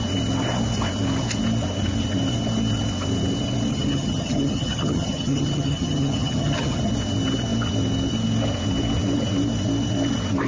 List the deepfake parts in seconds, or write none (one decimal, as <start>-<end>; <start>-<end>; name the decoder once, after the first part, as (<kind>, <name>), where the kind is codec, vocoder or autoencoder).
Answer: 3.7-6.9 (vocoder, HiFi-GAN)